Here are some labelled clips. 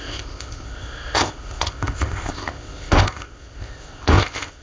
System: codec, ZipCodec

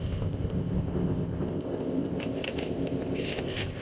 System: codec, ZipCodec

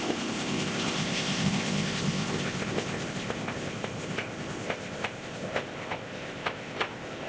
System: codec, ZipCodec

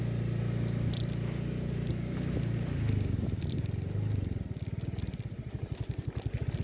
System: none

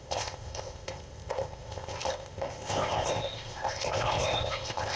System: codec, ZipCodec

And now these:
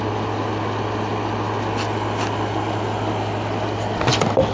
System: none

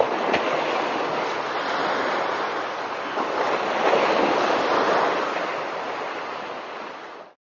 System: none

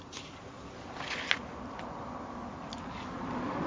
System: none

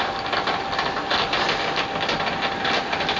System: none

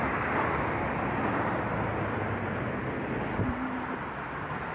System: none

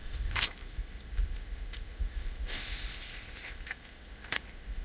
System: codec, ZipCodec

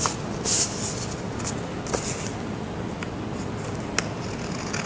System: none